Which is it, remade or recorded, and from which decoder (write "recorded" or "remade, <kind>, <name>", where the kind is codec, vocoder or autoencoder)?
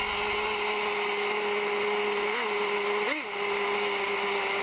recorded